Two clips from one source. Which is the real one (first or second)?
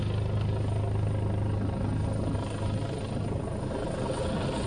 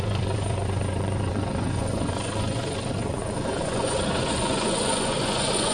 first